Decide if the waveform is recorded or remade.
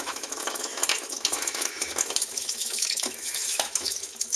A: remade